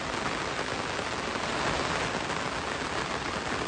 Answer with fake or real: real